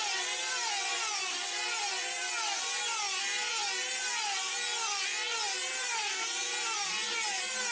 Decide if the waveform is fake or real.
real